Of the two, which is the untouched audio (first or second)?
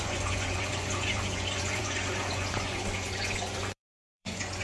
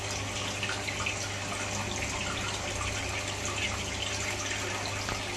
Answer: second